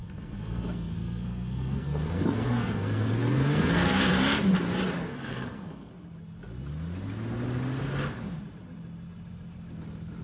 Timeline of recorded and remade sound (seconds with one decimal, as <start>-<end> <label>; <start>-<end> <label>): 0.0-4.1 remade; 4.1-5.1 recorded; 5.1-5.9 remade; 5.9-10.2 recorded